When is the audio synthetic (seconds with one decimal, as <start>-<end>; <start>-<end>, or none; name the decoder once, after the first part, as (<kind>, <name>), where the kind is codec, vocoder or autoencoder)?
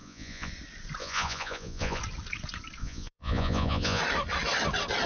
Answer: 0.0-0.5 (vocoder, Vocos); 1.0-2.0; 2.8-4.0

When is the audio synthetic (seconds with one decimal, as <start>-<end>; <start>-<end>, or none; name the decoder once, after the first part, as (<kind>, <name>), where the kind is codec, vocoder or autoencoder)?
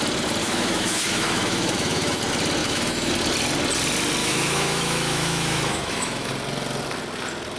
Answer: 0.4-2.2 (autoencoder, DAC-VAE); 2.6-3.1; 4.2-6.3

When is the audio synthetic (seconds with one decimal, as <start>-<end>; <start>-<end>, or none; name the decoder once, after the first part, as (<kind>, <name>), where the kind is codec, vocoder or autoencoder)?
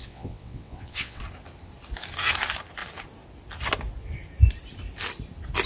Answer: 0.0-1.2 (vocoder, WaveNeXt)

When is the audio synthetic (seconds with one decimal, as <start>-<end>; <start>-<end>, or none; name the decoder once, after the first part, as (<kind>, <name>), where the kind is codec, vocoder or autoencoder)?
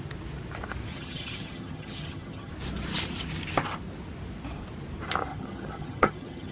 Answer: 0.9-2.5 (vocoder, HiFi-GAN); 5.3-6.5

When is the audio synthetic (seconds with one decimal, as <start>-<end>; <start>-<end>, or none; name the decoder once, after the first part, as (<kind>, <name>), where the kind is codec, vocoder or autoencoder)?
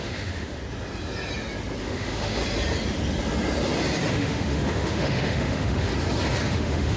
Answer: 0.0-0.6 (autoencoder, DAC-VAE); 1.8-2.4; 4.1-5.9; 6.5-7.0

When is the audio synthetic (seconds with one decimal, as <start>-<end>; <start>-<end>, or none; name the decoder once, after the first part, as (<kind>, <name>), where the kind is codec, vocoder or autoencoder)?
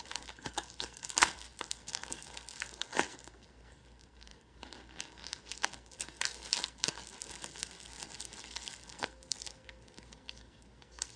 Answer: 0.0-11.2 (codec, SNAC)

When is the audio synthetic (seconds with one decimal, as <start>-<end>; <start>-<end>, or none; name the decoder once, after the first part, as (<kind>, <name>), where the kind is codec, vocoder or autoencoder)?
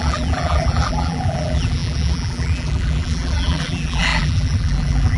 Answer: 0.0-5.2 (vocoder, BigVGAN v2)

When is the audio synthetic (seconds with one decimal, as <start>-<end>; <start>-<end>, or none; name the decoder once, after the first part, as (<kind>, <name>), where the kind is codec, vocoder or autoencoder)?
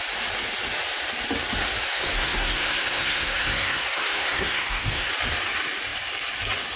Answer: 1.8-5.1 (codec, SNAC)